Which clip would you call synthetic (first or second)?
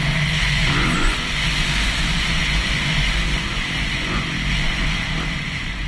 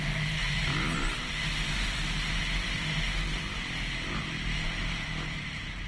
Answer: first